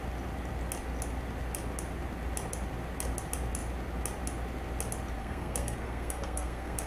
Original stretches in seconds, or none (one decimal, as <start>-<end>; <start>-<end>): 0.0-5.2